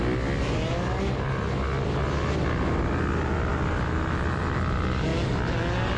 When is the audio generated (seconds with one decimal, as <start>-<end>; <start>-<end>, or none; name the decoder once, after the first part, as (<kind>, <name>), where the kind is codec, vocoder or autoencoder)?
none